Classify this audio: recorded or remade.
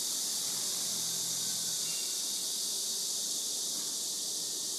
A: recorded